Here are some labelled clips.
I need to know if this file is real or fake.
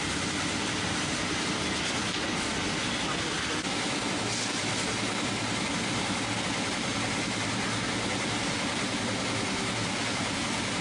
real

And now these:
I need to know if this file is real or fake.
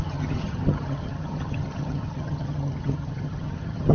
fake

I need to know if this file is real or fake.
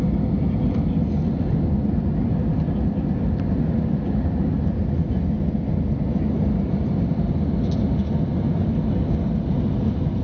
real